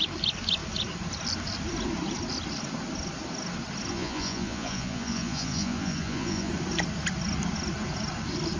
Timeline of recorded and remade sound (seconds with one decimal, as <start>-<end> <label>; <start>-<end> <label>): 0.0-3.9 recorded; 3.9-6.5 remade; 6.5-8.6 recorded